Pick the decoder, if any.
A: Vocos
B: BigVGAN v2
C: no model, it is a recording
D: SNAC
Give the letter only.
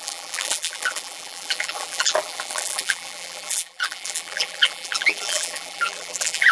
B